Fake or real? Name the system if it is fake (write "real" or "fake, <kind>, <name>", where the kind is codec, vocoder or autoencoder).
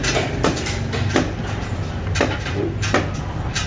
real